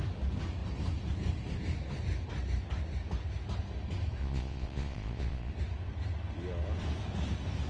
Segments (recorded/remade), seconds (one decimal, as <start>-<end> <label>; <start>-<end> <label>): 0.0-4.2 recorded; 4.2-5.5 remade; 5.5-7.7 recorded